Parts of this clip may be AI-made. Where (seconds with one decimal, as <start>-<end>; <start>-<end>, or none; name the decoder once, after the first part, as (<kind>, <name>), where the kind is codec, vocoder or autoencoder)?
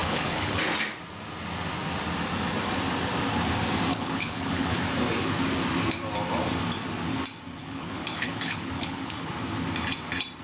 0.0-0.6 (codec, HILCodec); 3.9-4.8; 7.6-9.3